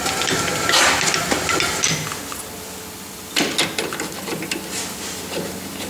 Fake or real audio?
real